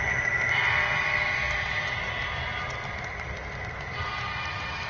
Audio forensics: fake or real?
real